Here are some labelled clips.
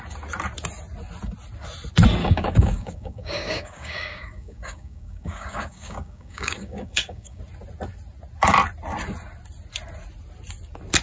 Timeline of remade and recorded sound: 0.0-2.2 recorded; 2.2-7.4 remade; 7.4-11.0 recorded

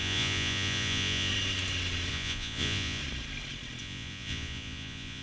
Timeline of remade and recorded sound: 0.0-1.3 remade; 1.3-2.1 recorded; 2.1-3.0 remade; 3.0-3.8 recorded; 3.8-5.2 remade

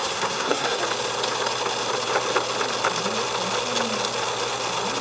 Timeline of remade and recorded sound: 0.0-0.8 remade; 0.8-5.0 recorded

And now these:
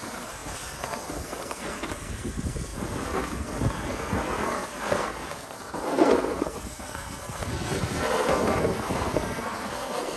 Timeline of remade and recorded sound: 0.0-10.2 remade

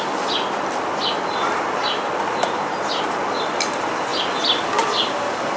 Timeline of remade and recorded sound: 0.0-5.6 recorded

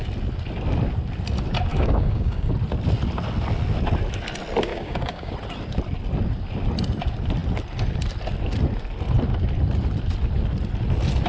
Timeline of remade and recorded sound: 0.0-1.7 recorded; 1.7-2.5 remade; 2.5-4.7 recorded; 4.7-5.3 remade; 5.3-11.3 recorded

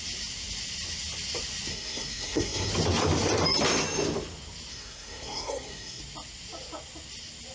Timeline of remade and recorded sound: 0.0-1.7 recorded; 1.7-2.7 remade; 2.7-4.7 recorded; 4.7-6.0 remade; 6.0-7.5 recorded

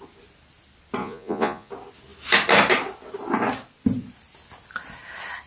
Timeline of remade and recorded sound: 0.0-1.0 recorded; 1.0-1.7 remade; 1.7-5.5 recorded